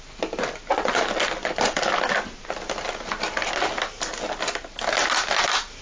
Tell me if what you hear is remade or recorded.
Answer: recorded